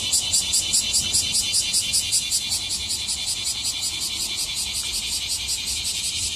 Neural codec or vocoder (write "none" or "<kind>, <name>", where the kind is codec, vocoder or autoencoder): none